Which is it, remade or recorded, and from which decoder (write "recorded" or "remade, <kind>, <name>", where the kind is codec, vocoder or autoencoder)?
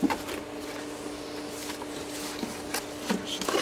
recorded